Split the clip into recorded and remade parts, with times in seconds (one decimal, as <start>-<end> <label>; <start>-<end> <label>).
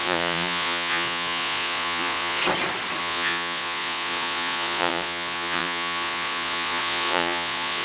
0.0-2.4 remade; 2.4-3.0 recorded; 3.0-7.8 remade